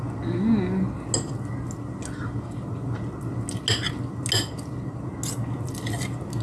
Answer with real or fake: real